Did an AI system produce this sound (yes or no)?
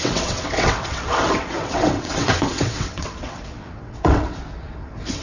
yes